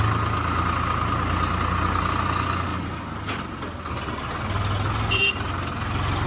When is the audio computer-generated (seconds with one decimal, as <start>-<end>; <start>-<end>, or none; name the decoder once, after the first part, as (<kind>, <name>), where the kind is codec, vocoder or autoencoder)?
none